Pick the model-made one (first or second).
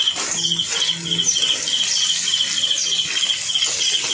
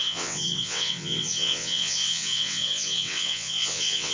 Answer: second